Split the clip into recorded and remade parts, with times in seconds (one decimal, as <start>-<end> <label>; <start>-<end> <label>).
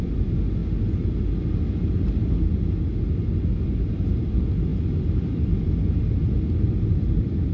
0.0-0.6 remade; 0.6-4.2 recorded; 4.2-7.5 remade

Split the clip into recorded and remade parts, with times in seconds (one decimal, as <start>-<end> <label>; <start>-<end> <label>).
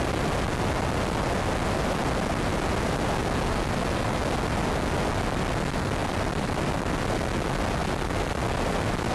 0.0-6.0 recorded; 6.0-7.0 remade; 7.0-9.1 recorded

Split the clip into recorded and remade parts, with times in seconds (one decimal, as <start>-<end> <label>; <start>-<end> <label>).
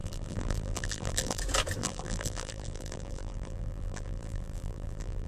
0.0-1.4 remade; 1.4-1.8 recorded; 1.8-5.3 remade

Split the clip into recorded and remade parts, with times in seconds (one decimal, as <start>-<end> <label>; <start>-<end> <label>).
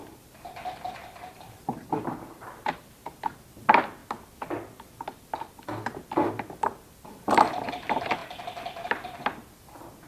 0.0-4.0 remade; 4.0-5.5 recorded; 5.5-8.2 remade; 8.2-9.6 recorded; 9.6-10.1 remade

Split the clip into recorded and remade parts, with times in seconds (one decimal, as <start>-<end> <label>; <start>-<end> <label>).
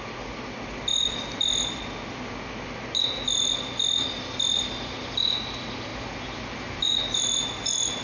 0.0-0.9 recorded; 0.9-1.8 remade; 1.8-8.0 recorded